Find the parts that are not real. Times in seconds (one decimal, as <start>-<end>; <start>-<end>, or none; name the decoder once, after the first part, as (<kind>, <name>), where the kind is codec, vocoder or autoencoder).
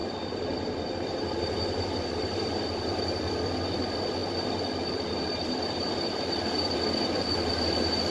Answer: none